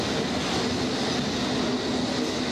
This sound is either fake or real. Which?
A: real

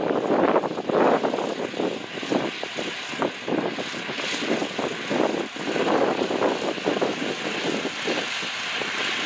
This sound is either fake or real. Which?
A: real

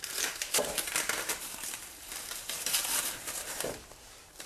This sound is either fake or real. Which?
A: fake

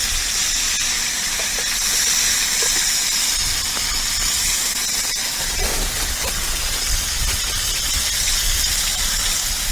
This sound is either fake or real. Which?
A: real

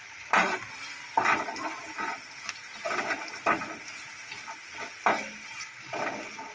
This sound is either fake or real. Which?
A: real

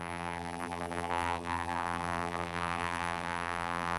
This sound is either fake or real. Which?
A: fake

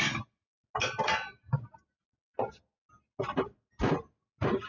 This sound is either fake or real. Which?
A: real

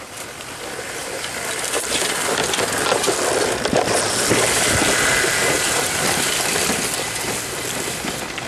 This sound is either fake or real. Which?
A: fake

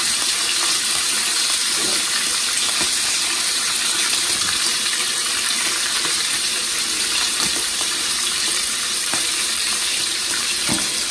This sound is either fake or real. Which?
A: fake